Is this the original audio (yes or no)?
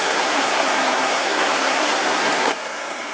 no